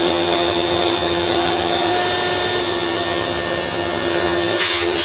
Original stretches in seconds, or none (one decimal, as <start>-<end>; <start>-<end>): 1.9-2.6